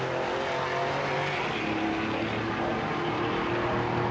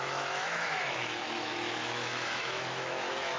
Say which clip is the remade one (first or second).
second